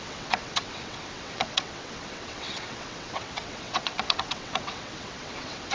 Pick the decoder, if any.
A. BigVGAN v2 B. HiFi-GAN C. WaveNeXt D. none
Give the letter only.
C